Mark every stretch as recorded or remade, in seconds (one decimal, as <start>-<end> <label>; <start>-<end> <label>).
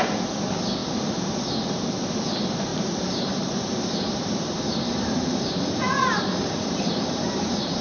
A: 0.0-0.8 recorded; 0.8-1.3 remade; 1.3-2.7 recorded; 2.7-7.8 remade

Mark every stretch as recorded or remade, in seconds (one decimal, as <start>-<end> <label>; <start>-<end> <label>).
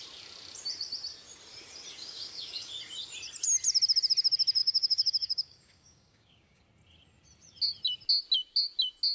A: 0.0-1.9 recorded; 1.9-2.7 remade; 2.7-4.6 recorded; 4.6-6.6 remade; 6.6-9.1 recorded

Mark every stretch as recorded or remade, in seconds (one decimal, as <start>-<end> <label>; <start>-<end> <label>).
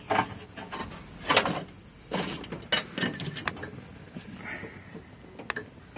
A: 0.0-6.0 recorded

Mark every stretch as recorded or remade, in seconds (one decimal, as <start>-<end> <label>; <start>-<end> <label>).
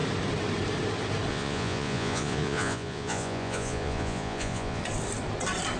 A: 0.0-1.3 recorded; 1.3-4.8 remade; 4.8-5.8 recorded